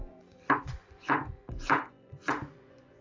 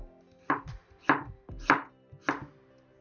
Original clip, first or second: second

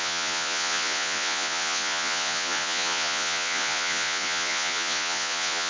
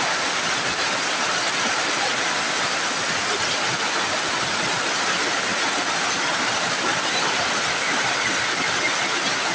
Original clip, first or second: second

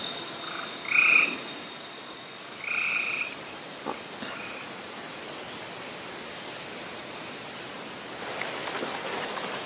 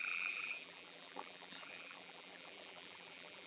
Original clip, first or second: first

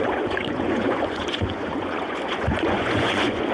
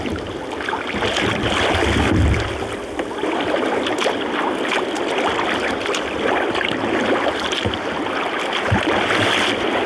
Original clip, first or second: second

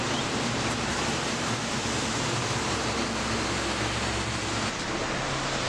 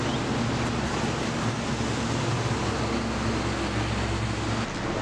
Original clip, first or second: second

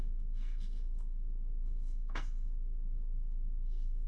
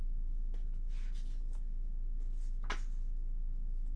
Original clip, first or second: second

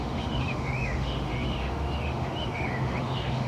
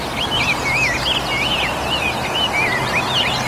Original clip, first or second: second